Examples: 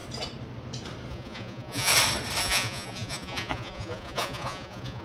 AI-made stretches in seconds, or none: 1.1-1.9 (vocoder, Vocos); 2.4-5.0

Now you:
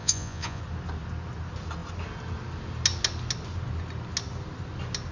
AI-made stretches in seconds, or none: 0.0-0.6 (vocoder, Vocos)

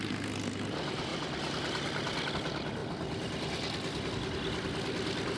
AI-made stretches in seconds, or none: none

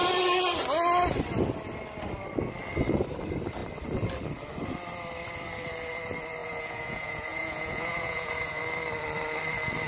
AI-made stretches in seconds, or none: 6.4-8.6 (vocoder, Vocos)

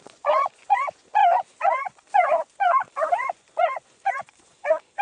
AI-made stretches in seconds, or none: 0.0-5.0 (vocoder, Vocos)

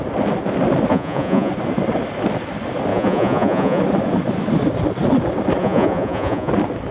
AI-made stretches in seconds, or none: 0.9-1.5 (vocoder, Vocos); 2.9-3.8; 5.6-6.5